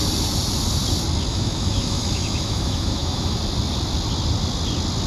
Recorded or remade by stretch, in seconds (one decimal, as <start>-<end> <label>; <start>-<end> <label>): 0.0-1.3 recorded; 1.3-3.4 remade; 3.4-5.1 recorded